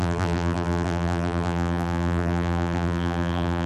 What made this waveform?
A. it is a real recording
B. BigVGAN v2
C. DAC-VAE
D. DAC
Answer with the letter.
B